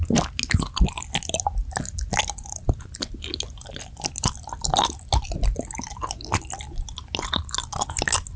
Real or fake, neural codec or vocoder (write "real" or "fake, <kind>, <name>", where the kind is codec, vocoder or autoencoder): real